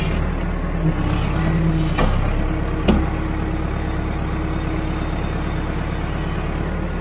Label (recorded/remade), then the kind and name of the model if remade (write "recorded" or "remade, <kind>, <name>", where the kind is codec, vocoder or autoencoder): recorded